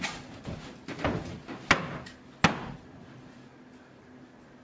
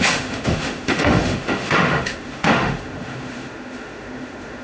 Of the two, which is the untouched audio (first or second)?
first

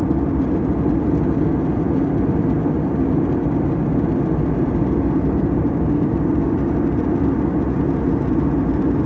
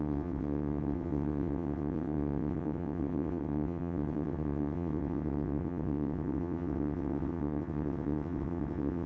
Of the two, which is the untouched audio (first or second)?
first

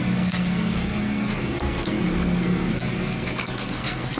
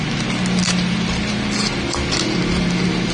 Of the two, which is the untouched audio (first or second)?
second